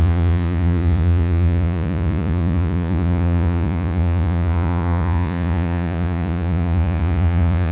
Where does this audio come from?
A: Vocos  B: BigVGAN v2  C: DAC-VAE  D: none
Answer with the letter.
A